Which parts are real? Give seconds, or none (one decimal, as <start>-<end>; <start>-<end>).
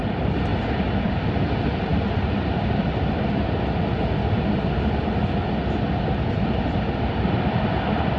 0.0-0.5; 1.3-8.2